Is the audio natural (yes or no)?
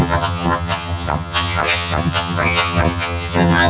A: no